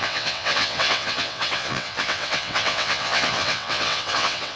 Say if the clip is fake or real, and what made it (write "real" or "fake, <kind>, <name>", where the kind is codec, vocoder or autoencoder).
fake, vocoder, WaveNeXt